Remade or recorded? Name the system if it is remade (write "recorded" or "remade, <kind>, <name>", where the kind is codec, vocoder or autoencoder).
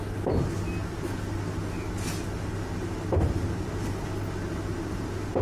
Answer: recorded